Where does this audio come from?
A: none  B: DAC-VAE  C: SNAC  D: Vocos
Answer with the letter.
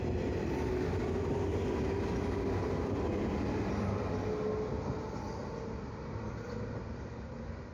A